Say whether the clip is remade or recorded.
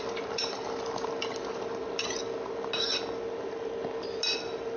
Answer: recorded